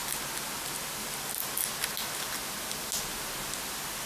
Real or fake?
real